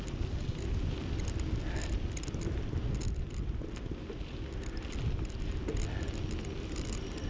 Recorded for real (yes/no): yes